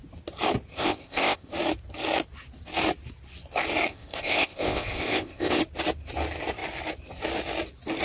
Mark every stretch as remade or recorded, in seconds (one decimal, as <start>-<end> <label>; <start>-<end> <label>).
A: 0.0-0.7 recorded; 0.7-1.5 remade; 1.5-3.9 recorded; 3.9-5.6 remade; 5.6-8.0 recorded